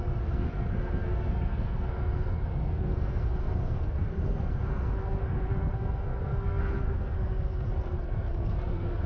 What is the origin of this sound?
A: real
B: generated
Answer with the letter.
B